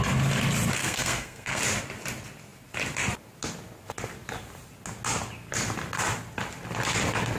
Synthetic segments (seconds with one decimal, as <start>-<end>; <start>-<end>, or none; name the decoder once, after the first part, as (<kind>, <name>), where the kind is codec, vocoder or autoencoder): 0.8-1.6 (codec, SNAC)